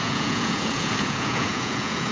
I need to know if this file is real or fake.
fake